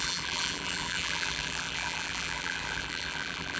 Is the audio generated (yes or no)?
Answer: yes